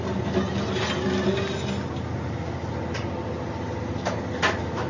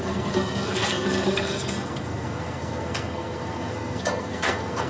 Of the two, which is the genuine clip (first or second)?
first